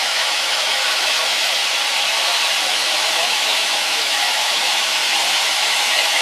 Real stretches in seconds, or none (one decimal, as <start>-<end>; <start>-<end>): 1.6-2.7; 5.0-5.5